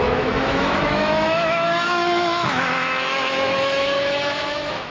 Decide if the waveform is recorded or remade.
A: remade